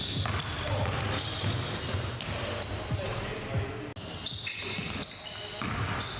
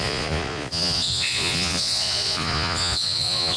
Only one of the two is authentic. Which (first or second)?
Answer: first